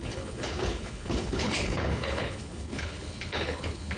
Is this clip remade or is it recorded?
remade